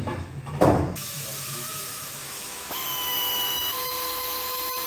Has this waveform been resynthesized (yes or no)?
yes